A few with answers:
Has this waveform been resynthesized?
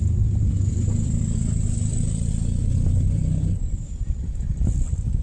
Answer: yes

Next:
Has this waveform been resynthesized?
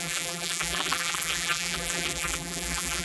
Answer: yes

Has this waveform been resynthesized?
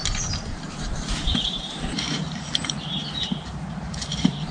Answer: yes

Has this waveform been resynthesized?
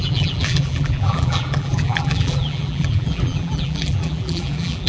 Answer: yes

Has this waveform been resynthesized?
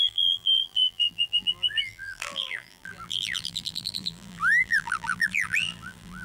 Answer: yes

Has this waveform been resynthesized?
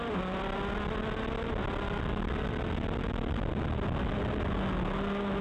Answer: no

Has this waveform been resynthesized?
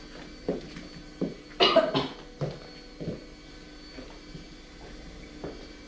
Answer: no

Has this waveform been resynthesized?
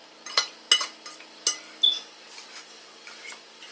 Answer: no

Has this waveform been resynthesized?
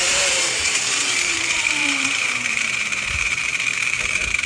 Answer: yes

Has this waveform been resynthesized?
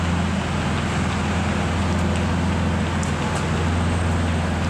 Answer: no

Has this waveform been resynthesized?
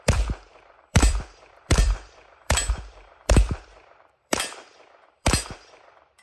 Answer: yes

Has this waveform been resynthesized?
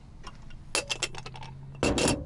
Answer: no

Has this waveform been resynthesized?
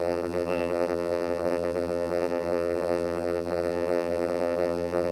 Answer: yes